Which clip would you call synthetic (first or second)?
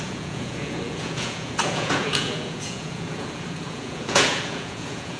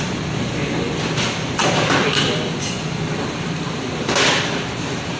first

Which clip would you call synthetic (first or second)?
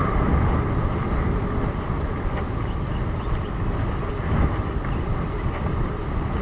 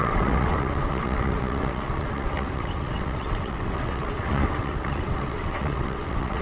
second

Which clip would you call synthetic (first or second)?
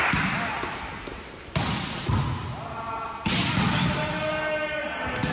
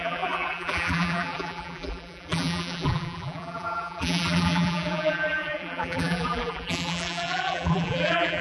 second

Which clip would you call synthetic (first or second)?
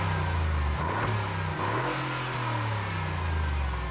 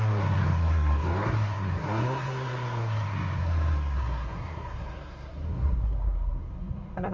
second